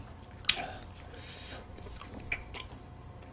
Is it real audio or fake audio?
real